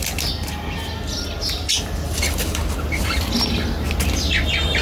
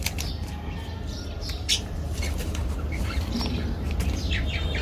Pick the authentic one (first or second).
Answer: first